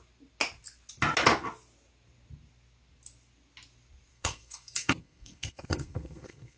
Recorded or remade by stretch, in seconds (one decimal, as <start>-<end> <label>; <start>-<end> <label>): 0.0-4.1 recorded; 4.1-6.6 remade

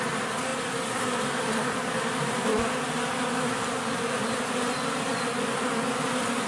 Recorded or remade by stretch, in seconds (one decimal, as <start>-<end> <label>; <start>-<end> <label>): 0.0-6.5 recorded

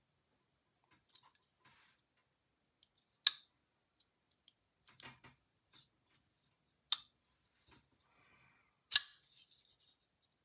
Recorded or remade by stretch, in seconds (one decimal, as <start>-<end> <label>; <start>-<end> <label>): 0.0-10.4 recorded

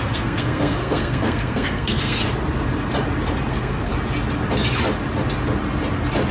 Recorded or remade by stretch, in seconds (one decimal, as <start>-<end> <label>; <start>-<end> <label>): 0.0-2.2 remade; 2.2-3.5 recorded; 3.5-3.9 remade; 3.9-6.3 recorded

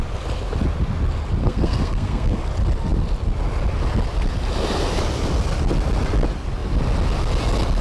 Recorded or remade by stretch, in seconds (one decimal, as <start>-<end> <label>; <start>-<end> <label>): 0.0-1.4 recorded; 1.4-2.4 remade; 2.4-7.8 recorded

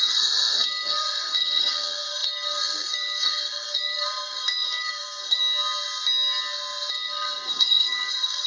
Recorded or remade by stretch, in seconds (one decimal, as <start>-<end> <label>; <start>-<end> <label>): 0.0-5.4 remade; 5.4-6.9 recorded; 6.9-8.5 remade

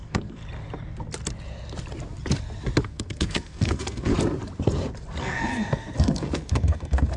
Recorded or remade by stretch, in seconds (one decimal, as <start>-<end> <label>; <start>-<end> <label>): 0.0-0.4 remade; 0.4-2.8 recorded; 2.8-4.1 remade; 4.1-5.2 recorded; 5.2-7.2 remade